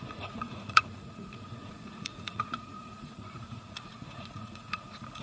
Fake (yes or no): yes